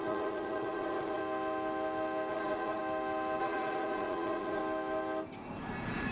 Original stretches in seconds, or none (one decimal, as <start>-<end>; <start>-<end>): 1.2-2.3; 2.8-3.4; 4.6-6.1

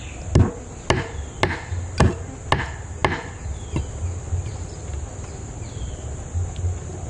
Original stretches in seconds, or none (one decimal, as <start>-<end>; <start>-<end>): 0.0-7.1